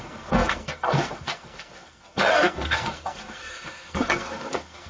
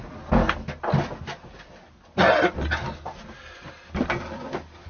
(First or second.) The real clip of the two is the second